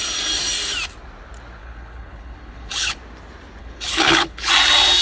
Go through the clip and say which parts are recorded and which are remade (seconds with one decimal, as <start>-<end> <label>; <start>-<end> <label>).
0.0-1.6 recorded; 1.6-3.0 remade; 3.0-3.6 recorded; 3.6-4.5 remade; 4.5-5.0 recorded